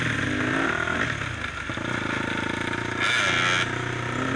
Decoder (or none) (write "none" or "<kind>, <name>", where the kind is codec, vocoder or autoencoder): none